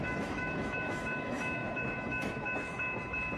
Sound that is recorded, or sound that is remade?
remade